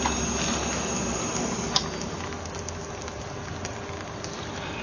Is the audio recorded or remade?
recorded